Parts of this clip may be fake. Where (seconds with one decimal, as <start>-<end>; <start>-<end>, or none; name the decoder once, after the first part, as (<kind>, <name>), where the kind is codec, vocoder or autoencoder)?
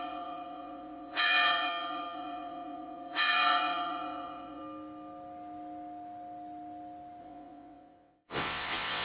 0.0-4.6 (vocoder, WaveNeXt); 7.2-9.0